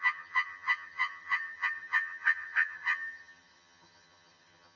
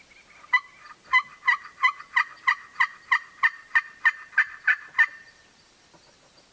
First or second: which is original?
second